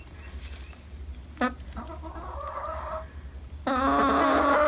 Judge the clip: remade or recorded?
recorded